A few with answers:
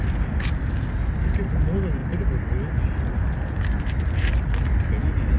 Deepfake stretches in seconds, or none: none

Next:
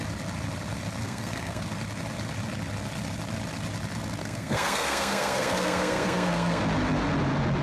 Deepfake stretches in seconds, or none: 1.0-1.6 (codec, SNAC); 4.2-6.6

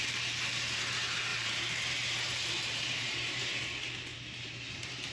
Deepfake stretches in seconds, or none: 1.3-3.6 (vocoder, BigVGAN v2); 4.1-5.1

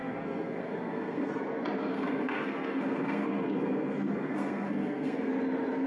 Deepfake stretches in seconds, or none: 0.0-1.4 (codec, SNAC); 1.8-5.3